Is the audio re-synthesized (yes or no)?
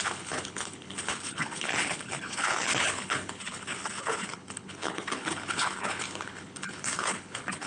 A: yes